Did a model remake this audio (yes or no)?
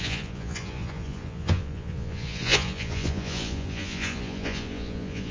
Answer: yes